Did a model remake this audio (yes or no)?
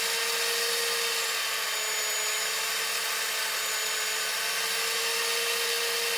no